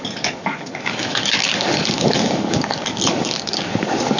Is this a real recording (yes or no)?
no